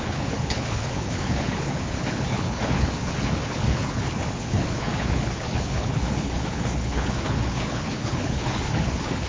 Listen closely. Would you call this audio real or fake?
fake